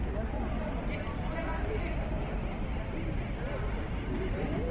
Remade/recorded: recorded